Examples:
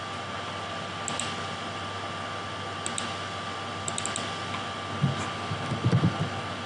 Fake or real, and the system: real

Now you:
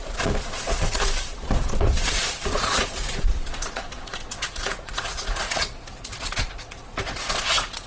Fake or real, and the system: fake, vocoder, Vocos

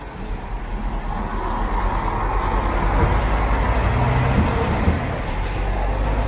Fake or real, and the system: real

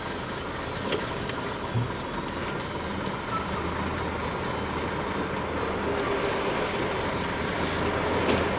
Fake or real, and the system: real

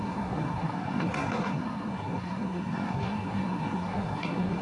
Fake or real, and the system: fake, codec, SNAC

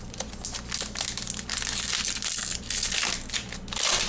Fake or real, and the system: real